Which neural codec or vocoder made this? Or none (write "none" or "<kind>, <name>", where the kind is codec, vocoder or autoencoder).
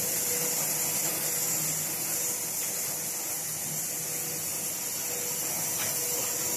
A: none